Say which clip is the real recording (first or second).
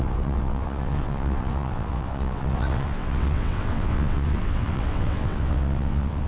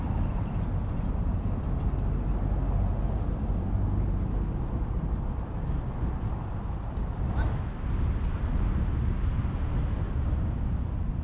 second